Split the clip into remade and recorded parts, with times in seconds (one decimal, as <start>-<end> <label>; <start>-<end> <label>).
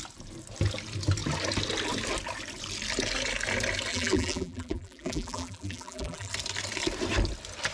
0.0-3.9 recorded; 3.9-6.3 remade; 6.3-7.7 recorded